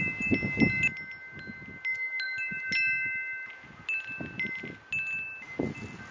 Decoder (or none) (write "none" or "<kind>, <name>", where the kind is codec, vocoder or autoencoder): none